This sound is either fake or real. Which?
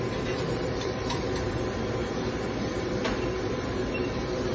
fake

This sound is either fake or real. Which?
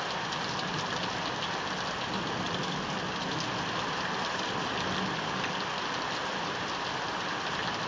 real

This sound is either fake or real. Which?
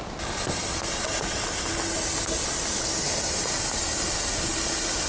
real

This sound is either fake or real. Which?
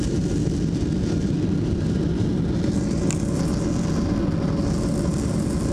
real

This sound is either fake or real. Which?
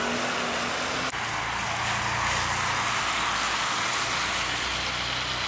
real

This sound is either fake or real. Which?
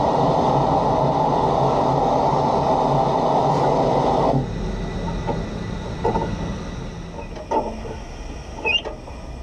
real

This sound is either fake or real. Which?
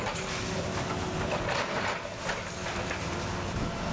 real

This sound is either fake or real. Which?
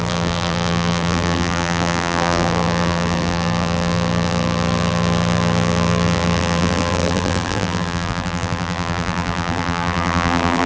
fake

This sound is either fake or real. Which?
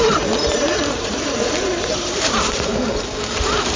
fake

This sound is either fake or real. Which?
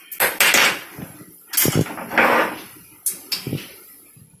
real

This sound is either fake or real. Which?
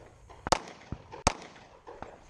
real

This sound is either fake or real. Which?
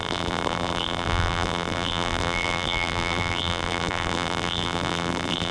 fake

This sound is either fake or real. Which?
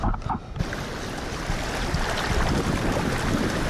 real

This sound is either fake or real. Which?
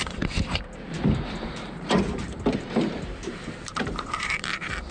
fake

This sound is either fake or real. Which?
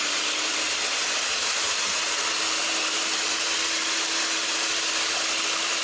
fake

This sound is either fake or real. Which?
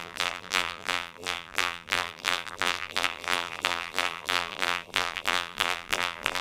fake